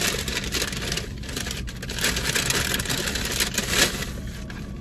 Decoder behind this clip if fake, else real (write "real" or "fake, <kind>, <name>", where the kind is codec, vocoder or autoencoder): fake, vocoder, BigVGAN v2